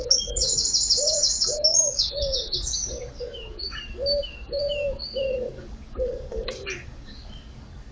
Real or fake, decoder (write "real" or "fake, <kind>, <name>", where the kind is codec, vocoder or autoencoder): fake, codec, DAC